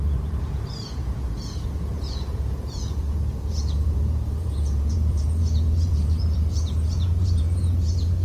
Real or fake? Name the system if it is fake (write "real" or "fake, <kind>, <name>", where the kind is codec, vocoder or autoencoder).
fake, vocoder, Vocos